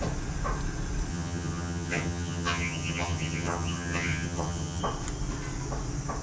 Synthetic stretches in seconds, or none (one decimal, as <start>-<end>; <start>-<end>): 1.1-4.8